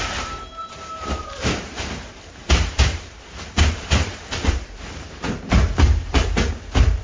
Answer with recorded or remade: remade